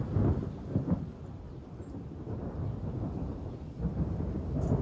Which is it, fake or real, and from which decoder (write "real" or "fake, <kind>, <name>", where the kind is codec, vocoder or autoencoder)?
real